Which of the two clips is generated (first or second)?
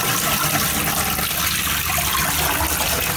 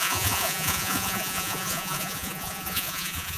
second